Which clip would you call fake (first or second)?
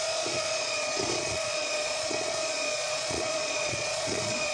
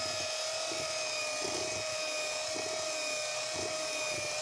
first